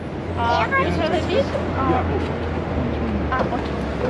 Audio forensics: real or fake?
real